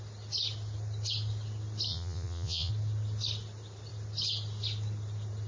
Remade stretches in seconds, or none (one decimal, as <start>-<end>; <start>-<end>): 1.9-2.7